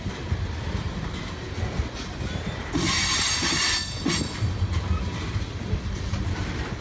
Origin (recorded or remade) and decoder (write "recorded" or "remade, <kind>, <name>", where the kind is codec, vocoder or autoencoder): recorded